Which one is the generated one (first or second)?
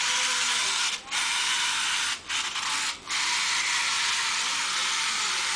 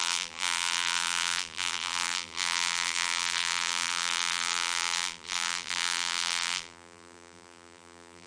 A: second